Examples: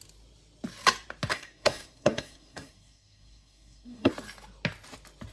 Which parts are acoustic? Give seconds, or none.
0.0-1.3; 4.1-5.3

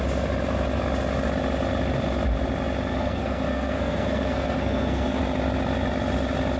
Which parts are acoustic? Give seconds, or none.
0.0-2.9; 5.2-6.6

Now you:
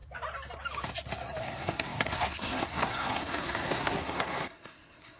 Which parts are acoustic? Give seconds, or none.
0.0-1.4